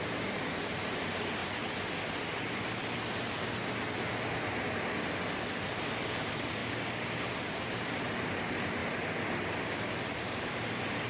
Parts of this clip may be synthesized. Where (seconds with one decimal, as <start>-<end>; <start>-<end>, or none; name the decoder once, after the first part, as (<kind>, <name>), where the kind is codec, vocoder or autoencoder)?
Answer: 0.0-1.4 (vocoder, BigVGAN v2); 5.5-6.6; 7.3-8.8; 10.2-11.1